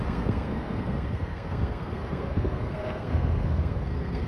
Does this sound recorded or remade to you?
remade